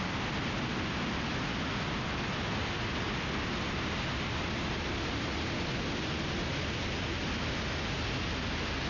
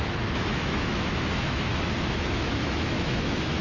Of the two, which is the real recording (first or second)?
first